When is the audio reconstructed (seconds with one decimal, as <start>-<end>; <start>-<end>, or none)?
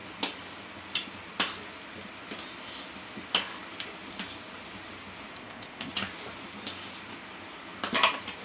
5.3-5.9